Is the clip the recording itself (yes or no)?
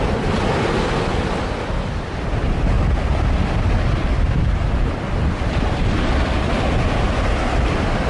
yes